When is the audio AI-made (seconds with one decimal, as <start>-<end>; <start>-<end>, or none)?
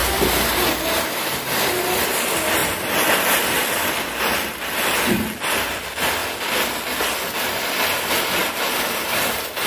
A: 0.0-1.6; 8.4-9.2